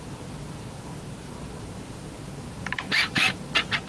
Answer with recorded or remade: remade